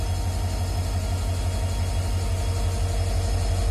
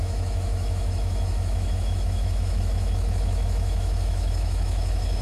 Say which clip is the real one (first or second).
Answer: first